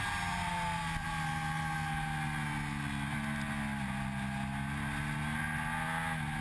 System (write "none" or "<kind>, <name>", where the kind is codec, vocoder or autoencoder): none